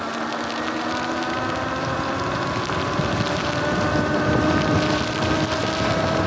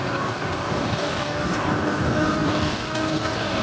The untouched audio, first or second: first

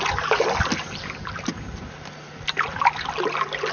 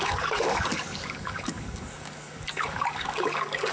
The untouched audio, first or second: first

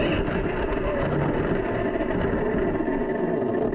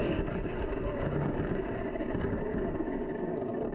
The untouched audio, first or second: first